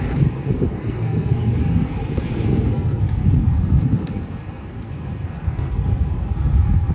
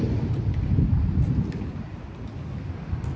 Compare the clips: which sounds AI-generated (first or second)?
first